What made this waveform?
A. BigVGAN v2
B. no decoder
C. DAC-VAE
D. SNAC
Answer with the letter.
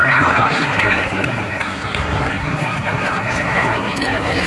D